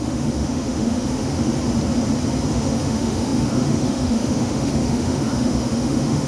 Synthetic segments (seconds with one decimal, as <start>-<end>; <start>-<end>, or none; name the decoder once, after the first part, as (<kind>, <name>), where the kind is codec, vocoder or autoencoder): 0.0-1.5 (autoencoder, DAC-VAE); 2.5-6.3